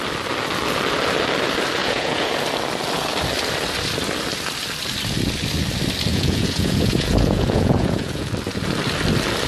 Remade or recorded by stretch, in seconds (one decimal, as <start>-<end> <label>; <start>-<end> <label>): 0.0-1.8 recorded; 1.8-2.3 remade; 2.3-6.1 recorded; 6.1-8.3 remade; 8.3-9.5 recorded